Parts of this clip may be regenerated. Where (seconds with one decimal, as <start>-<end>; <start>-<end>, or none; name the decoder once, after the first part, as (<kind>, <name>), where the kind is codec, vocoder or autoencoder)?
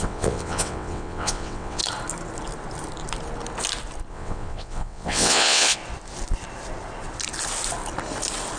0.0-1.8 (vocoder, WaveNeXt); 4.1-5.8